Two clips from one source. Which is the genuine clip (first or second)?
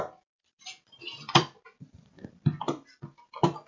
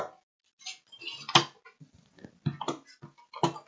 second